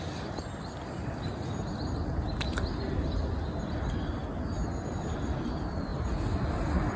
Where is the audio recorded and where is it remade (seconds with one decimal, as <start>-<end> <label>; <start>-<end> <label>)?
0.0-7.0 recorded

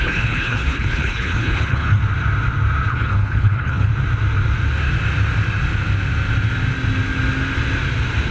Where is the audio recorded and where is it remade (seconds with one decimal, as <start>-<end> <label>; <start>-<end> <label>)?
0.0-2.0 remade; 2.0-2.9 recorded; 2.9-3.9 remade; 3.9-8.3 recorded

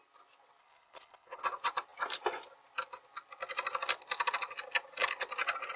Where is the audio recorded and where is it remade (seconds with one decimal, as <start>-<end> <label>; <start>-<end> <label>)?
0.0-0.6 recorded; 0.6-1.4 remade; 1.4-5.8 recorded

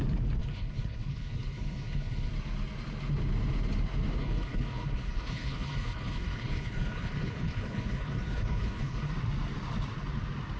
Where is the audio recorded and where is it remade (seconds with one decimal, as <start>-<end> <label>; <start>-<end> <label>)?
0.0-0.4 recorded; 0.4-2.3 remade; 2.3-4.2 recorded; 4.2-9.1 remade; 9.1-10.6 recorded